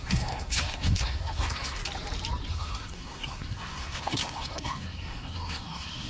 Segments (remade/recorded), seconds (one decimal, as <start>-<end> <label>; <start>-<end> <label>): 0.0-1.8 remade; 1.8-2.5 recorded; 2.5-6.1 remade